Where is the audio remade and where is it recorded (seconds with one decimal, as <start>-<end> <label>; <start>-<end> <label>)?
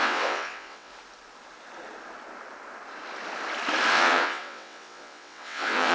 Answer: 0.0-0.9 remade; 0.9-3.9 recorded; 3.9-5.9 remade